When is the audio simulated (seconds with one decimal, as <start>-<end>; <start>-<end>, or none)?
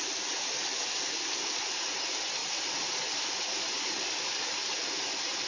none